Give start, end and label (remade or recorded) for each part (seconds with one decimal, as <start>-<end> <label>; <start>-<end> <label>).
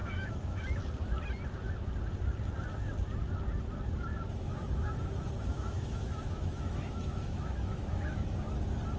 0.0-0.6 remade; 0.6-4.1 recorded; 4.1-8.5 remade; 8.5-9.0 recorded